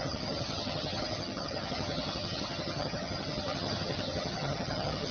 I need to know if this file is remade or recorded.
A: remade